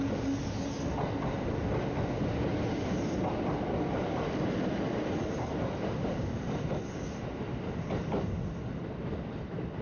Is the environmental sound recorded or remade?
recorded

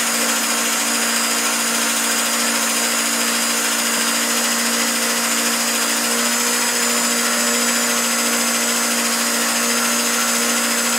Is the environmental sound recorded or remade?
recorded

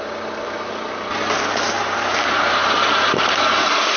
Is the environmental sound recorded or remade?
recorded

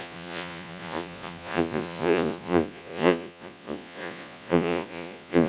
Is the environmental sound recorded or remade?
remade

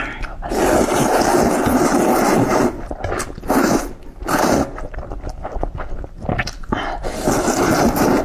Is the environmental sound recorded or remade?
recorded